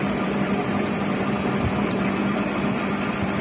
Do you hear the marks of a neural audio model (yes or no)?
yes